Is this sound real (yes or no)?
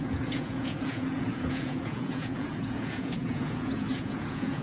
no